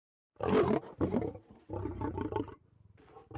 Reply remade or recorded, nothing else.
recorded